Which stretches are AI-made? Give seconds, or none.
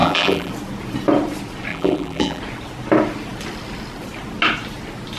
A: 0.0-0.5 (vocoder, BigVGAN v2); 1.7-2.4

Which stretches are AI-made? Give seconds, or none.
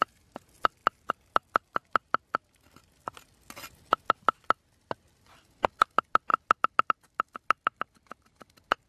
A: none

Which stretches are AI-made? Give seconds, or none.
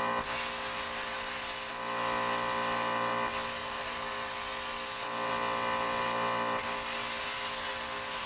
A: none